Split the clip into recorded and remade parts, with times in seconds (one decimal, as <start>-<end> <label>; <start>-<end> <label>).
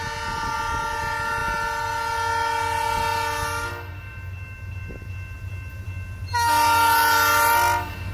0.0-8.1 recorded